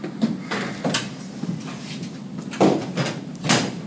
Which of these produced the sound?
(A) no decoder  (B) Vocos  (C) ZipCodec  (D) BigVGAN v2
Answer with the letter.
A